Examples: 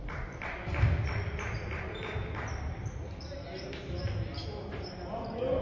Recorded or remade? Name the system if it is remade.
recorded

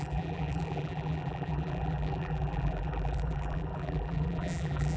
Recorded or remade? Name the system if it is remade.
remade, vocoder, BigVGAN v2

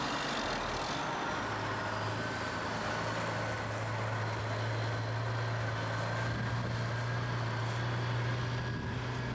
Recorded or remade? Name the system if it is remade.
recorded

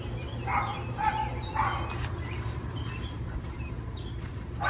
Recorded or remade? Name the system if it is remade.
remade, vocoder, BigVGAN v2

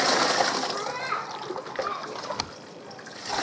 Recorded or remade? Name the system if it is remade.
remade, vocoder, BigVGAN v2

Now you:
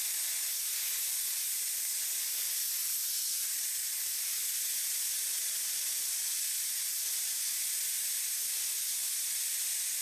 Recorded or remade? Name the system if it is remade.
recorded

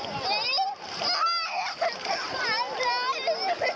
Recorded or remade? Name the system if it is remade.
recorded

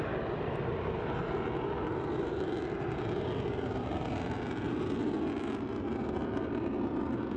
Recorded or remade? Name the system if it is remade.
recorded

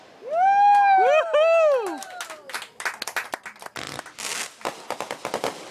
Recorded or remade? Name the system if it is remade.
recorded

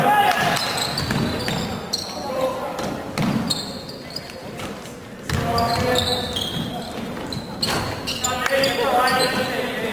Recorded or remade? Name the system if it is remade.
recorded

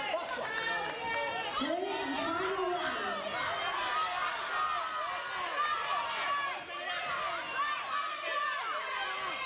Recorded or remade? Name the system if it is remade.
recorded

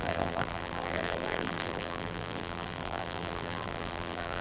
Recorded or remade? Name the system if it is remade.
remade, vocoder, BigVGAN v2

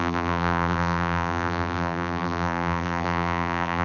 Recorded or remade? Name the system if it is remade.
remade, vocoder, BigVGAN v2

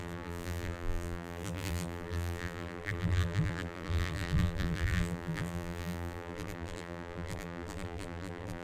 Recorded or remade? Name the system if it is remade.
remade, vocoder, BigVGAN v2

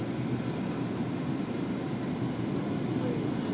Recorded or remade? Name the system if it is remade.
recorded